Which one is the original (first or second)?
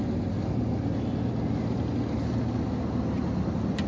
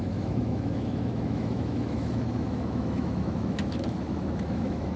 first